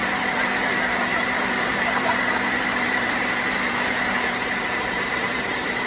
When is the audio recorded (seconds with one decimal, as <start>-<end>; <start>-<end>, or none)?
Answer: none